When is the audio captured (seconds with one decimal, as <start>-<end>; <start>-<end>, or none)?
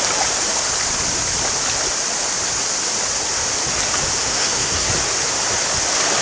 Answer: 0.0-4.2; 4.9-6.2